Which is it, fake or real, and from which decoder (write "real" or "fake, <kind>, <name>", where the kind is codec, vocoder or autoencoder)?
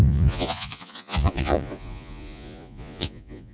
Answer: fake, vocoder, Vocos